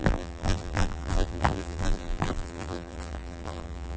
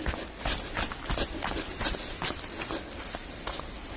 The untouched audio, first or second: second